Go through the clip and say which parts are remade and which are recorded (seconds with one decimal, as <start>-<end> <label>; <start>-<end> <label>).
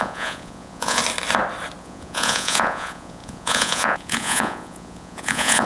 0.0-1.0 remade; 1.0-1.8 recorded; 1.8-5.7 remade